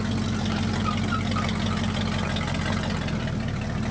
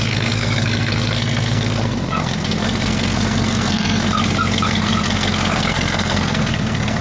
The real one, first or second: first